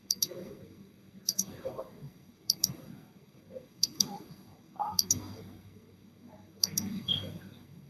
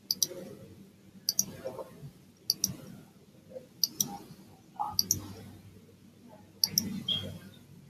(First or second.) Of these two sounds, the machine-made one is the first